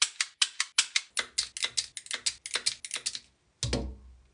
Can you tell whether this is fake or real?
real